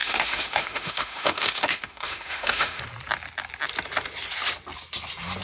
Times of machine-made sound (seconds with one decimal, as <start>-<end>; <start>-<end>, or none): 0.0-2.8